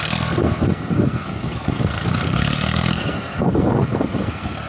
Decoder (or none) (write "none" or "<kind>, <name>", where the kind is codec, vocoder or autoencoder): codec, SNAC